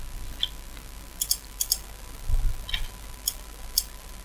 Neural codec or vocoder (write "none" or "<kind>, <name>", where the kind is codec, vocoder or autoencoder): none